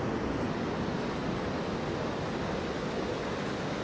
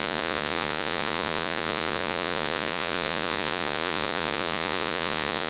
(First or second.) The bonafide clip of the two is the first